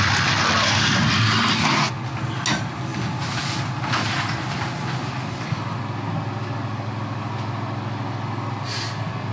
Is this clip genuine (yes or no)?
yes